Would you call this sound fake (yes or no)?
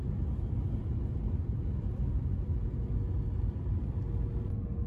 no